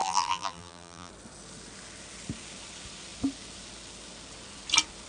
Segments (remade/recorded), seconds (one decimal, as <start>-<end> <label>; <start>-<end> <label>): 0.0-1.1 remade; 1.1-5.1 recorded